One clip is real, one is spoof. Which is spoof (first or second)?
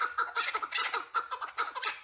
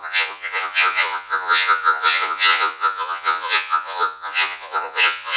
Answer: second